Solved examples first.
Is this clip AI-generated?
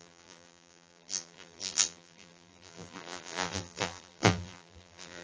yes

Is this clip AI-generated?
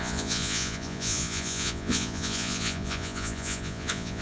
yes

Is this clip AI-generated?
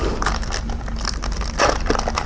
no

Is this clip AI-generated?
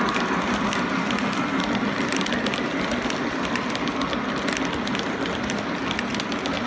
no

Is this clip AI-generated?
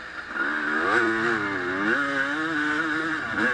no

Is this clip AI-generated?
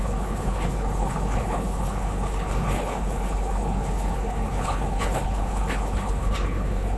yes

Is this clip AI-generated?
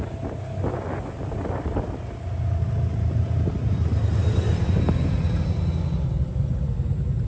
no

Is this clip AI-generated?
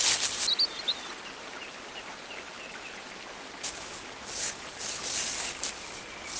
no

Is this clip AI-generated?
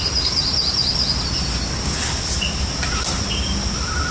no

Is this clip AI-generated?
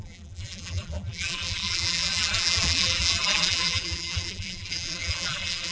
yes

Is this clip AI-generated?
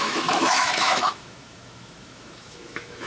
yes